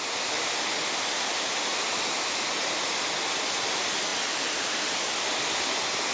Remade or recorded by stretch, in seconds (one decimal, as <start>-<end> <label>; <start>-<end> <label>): 0.0-6.1 recorded